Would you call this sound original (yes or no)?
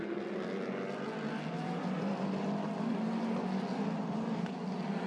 yes